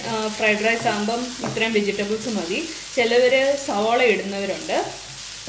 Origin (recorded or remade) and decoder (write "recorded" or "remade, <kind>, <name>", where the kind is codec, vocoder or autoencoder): recorded